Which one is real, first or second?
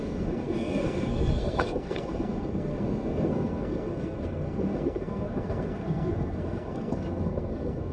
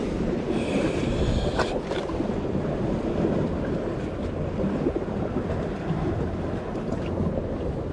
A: second